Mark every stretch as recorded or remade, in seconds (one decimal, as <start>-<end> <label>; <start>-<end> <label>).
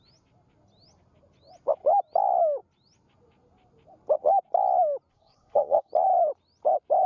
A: 0.0-5.1 recorded; 5.1-5.9 remade; 5.9-7.1 recorded